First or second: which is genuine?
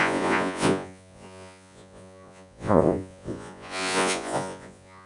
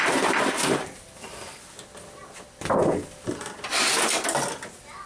second